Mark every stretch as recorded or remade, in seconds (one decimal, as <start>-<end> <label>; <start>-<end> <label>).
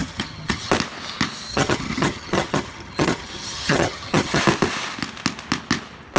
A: 0.0-0.7 remade; 0.7-1.5 recorded; 1.5-4.4 remade; 4.4-6.2 recorded